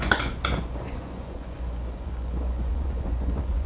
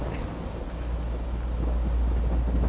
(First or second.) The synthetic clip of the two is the first